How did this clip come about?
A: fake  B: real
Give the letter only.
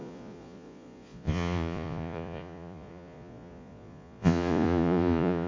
A